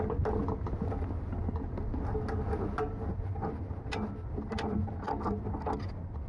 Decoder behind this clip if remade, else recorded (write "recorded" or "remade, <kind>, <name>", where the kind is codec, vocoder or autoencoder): recorded